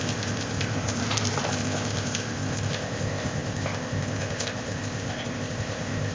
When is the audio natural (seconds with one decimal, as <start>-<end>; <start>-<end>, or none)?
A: 1.0-1.5